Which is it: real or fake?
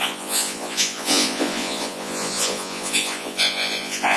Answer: fake